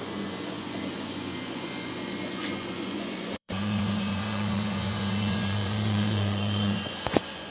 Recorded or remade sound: remade